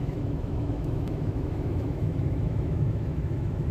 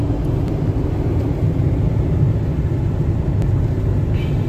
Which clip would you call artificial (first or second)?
first